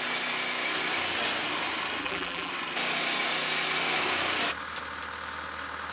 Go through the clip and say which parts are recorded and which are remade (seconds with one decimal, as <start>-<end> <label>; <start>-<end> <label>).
0.0-2.0 recorded; 2.0-2.5 remade; 2.5-5.9 recorded